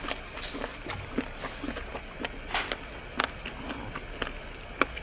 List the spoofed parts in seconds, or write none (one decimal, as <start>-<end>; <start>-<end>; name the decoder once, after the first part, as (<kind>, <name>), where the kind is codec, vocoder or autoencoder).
none